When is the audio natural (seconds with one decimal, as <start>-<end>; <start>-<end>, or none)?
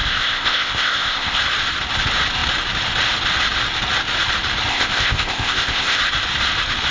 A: 1.4-4.7; 6.0-6.9